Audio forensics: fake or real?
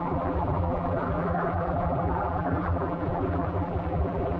fake